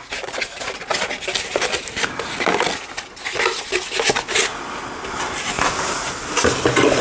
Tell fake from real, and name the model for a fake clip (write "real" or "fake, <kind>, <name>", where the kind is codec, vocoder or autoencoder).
real